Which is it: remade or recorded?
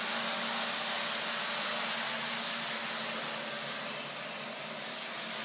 recorded